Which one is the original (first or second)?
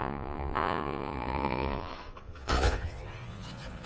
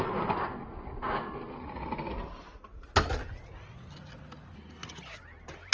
second